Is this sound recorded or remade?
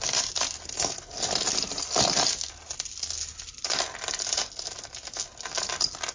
recorded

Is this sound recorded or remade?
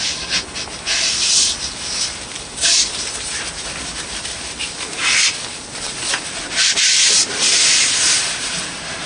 recorded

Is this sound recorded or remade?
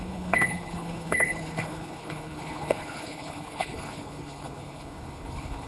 remade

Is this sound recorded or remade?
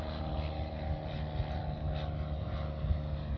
recorded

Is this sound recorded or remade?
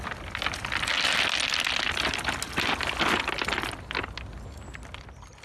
recorded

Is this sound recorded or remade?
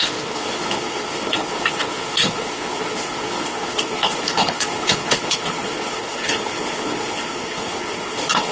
remade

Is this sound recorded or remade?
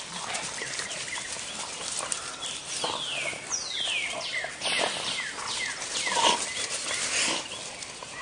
recorded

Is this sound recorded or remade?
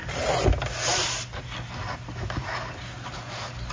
recorded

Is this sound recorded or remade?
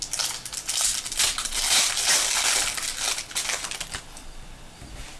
recorded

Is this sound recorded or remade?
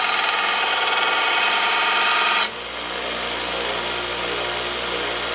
recorded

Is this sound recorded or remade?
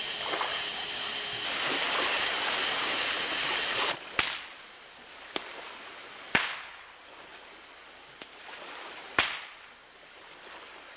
recorded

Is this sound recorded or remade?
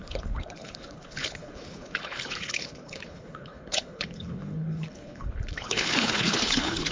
remade